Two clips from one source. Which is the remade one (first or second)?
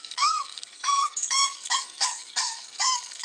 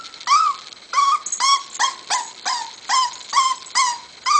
first